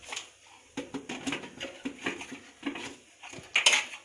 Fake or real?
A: real